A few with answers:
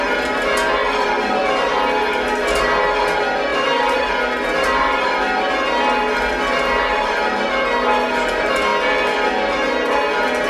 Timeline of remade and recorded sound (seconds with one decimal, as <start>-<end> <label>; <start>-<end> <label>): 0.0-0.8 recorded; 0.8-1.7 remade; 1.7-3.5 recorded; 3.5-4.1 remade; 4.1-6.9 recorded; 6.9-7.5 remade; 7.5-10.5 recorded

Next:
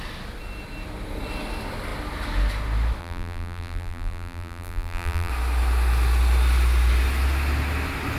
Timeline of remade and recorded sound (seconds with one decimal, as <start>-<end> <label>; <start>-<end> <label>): 0.0-3.0 recorded; 3.0-5.3 remade; 5.3-8.2 recorded

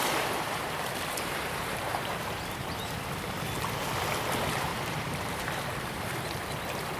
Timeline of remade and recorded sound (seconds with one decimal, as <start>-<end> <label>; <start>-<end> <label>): 0.0-3.1 remade; 3.1-4.7 recorded; 4.7-6.5 remade; 6.5-7.0 recorded

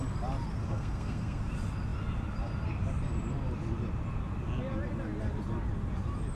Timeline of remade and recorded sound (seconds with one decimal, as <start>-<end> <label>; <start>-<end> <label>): 0.0-0.6 recorded; 0.6-1.4 remade; 1.4-6.3 recorded

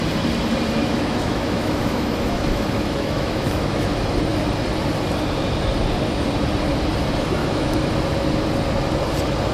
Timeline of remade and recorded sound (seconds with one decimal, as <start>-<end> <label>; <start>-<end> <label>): 0.0-0.8 recorded; 0.8-3.9 remade; 3.9-7.4 recorded; 7.4-7.9 remade; 7.9-9.5 recorded

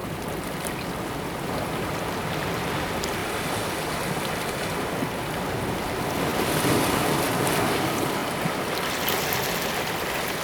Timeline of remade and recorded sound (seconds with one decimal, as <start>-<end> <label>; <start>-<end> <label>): 0.0-2.6 remade; 2.6-3.2 recorded; 3.2-3.9 remade; 3.9-10.4 recorded

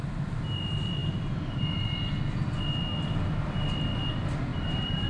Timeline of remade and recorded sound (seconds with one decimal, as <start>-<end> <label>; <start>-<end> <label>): 0.0-4.5 recorded; 4.5-5.1 remade

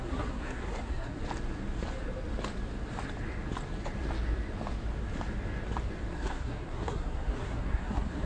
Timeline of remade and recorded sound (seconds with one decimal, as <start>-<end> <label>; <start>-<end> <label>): 0.0-1.2 remade; 1.2-6.1 recorded; 6.1-8.3 remade